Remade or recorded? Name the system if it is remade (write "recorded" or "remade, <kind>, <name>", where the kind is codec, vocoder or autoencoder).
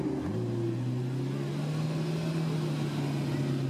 recorded